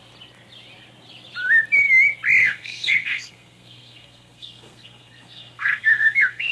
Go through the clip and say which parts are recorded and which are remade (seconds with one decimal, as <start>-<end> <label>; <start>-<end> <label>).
0.0-2.4 recorded; 2.4-6.5 remade